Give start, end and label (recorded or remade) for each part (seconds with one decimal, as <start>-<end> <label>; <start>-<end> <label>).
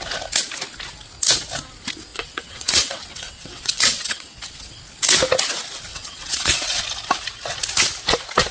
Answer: 0.0-2.1 recorded; 2.1-4.4 remade; 4.4-5.9 recorded; 5.9-6.8 remade; 6.8-8.5 recorded